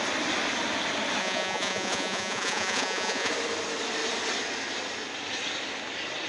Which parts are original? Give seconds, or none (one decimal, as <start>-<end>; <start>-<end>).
0.0-1.2; 3.3-6.3